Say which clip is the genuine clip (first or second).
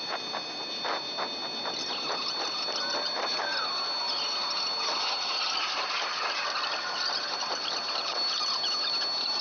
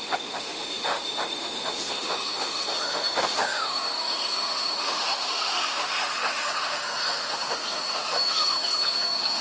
first